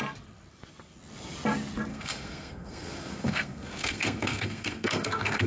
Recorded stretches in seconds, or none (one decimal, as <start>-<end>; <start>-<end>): 0.0-1.9